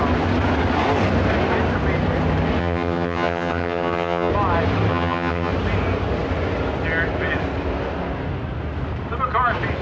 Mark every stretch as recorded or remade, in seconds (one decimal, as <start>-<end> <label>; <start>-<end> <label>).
0.0-2.6 recorded; 2.6-4.3 remade; 4.3-4.9 recorded; 4.9-5.5 remade; 5.5-9.8 recorded